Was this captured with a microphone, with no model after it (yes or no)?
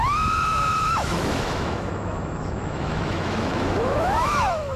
no